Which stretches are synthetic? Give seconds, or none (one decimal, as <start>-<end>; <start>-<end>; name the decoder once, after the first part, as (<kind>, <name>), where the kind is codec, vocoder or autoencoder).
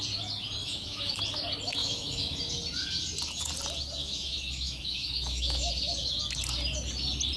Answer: 0.6-1.2 (autoencoder, DAC-VAE); 1.8-2.4; 4.0-5.7